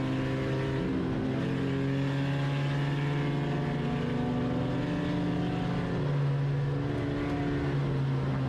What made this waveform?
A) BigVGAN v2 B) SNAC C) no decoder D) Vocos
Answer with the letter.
C